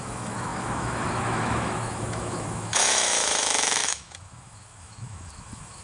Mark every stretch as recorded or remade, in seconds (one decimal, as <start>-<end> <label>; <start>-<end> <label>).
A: 0.0-5.8 remade